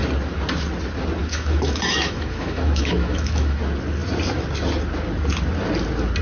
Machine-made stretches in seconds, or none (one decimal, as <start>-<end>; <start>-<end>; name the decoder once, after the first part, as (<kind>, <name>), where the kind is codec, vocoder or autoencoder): 1.2-3.6 (autoencoder, DAC-VAE)